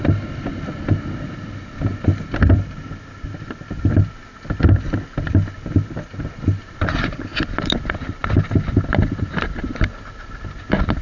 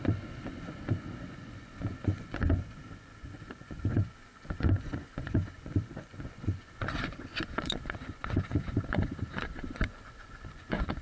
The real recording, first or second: first